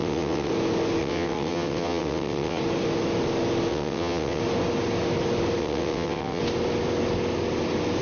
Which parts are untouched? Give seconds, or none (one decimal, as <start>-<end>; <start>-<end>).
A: 0.5-1.0; 2.6-3.7; 4.4-5.6; 6.4-8.0